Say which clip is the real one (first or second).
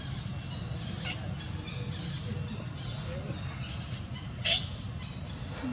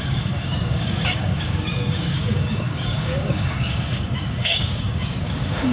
first